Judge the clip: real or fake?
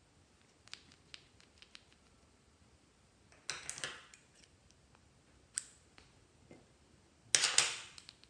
real